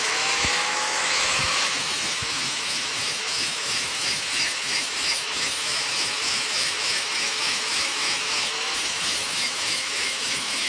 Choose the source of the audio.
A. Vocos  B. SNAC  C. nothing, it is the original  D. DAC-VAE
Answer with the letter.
D